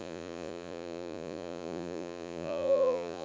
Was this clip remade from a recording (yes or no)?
yes